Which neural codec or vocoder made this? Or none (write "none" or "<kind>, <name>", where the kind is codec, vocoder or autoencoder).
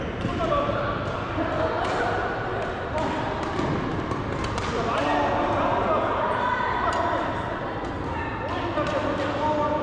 none